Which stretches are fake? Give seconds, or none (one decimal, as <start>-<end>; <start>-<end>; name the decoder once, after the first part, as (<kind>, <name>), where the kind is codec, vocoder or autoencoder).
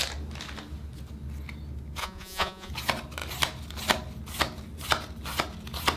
2.0-2.7 (vocoder, Vocos)